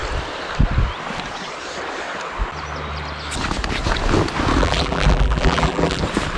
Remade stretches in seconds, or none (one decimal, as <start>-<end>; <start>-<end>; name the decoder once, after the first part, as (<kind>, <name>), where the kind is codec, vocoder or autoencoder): 4.6-6.0 (vocoder, BigVGAN v2)